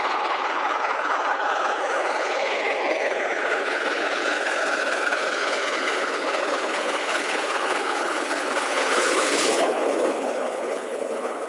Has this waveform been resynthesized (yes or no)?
yes